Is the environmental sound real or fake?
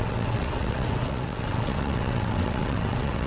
fake